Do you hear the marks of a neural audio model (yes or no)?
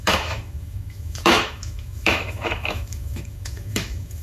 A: yes